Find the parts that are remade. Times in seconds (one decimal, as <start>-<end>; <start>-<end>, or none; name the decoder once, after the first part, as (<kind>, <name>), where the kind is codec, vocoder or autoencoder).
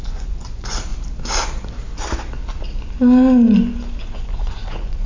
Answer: 0.0-0.9 (vocoder, Vocos); 4.0-5.1